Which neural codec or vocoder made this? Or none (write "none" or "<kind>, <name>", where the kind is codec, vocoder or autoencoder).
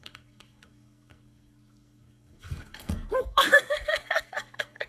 codec, SNAC